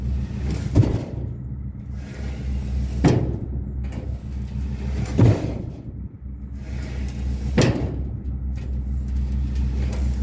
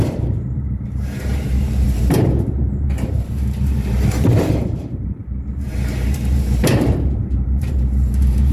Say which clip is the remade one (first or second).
second